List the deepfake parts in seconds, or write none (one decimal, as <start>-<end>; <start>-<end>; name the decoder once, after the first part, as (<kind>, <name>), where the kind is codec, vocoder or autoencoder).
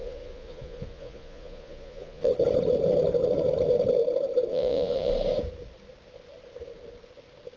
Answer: 0.0-2.3 (vocoder, Vocos); 4.5-5.1